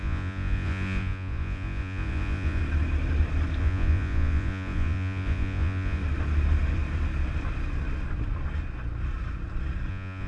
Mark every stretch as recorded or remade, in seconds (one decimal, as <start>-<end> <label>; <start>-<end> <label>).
0.0-2.6 remade; 2.6-3.6 recorded; 3.6-6.0 remade; 6.0-9.9 recorded; 9.9-10.3 remade